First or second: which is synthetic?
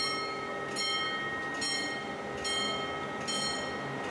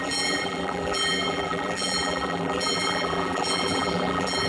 second